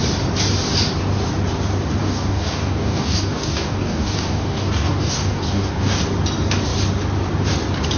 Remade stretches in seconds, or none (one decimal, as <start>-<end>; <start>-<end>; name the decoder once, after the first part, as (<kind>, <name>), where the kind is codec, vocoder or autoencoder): 2.0-6.0 (codec, DAC)